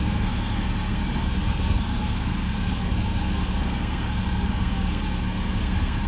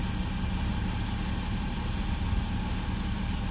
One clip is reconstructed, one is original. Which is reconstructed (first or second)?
first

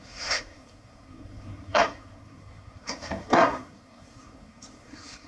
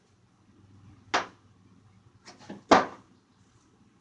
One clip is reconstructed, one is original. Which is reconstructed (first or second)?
first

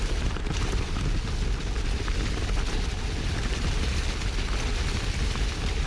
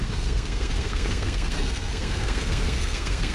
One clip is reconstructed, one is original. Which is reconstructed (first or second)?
second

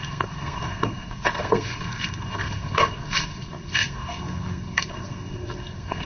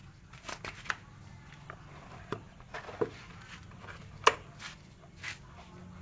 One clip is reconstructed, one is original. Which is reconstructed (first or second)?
first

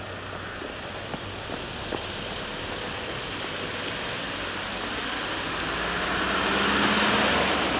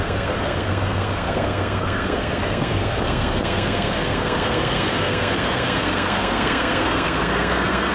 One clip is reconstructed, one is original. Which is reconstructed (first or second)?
second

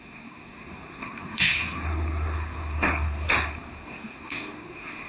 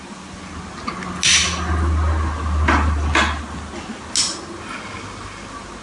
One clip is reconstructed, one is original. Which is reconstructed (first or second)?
first